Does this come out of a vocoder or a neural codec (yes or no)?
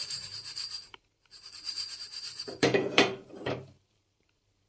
yes